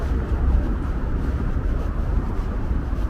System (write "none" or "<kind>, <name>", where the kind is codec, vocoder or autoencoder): vocoder, BigVGAN v2